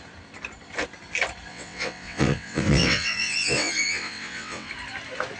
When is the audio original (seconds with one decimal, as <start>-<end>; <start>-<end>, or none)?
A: 0.0-1.5; 4.7-5.4